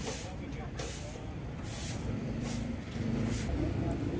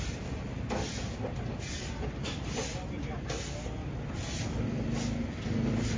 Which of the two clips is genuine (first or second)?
second